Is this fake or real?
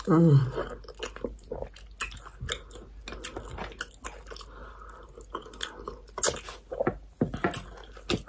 real